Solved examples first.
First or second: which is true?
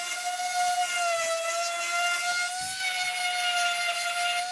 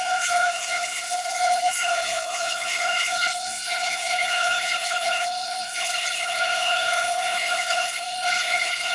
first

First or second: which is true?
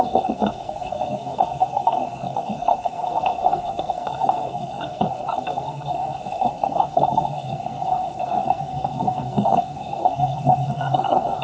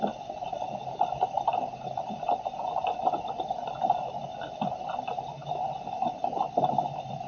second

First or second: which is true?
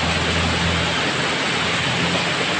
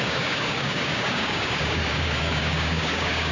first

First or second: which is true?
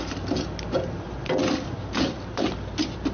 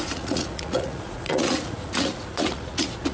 first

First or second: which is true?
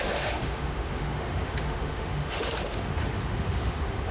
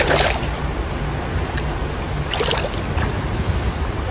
second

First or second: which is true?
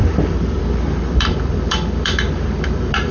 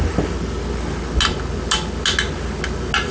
second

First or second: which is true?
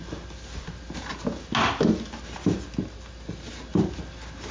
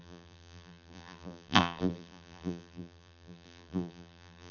first